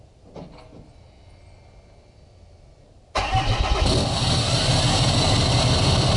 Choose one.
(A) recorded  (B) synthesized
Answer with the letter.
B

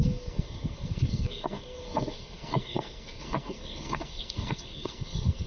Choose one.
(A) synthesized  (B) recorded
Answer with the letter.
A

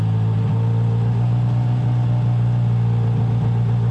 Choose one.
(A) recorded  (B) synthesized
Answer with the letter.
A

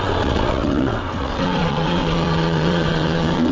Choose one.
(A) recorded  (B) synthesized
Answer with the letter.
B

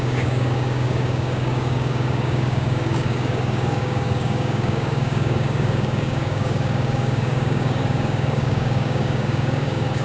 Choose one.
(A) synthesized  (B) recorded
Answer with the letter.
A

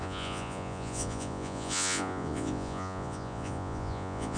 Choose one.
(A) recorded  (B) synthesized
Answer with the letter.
B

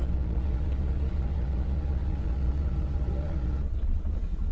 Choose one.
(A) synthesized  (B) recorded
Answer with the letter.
A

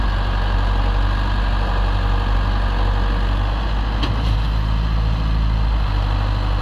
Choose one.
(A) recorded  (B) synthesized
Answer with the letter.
A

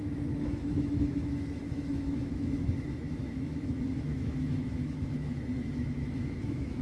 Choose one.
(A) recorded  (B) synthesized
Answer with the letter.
B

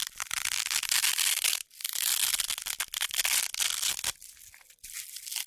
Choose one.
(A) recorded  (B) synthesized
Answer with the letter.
A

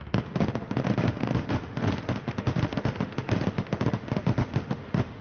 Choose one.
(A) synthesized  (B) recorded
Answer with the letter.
A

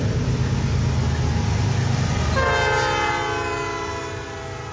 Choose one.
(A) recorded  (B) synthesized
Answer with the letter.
A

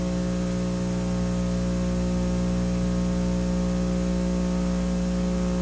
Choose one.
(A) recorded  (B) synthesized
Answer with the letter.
A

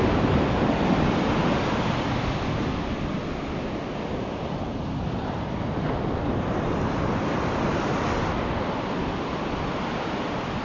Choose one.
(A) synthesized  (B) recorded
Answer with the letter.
B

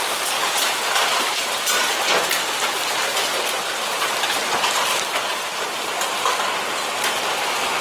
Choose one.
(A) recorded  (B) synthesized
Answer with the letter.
A